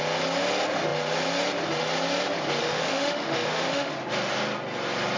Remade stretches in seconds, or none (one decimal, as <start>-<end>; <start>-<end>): 2.6-3.9